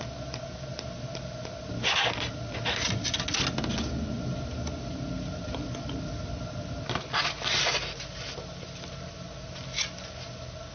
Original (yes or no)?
yes